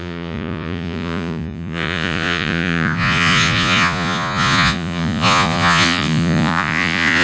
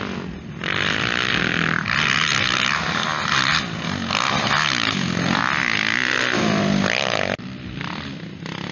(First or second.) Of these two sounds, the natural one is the second